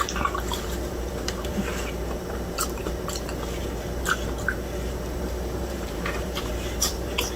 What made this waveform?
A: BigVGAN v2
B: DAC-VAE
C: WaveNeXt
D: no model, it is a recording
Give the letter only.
A